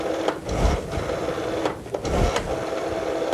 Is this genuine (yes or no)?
yes